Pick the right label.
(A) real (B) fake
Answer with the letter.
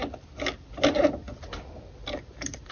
A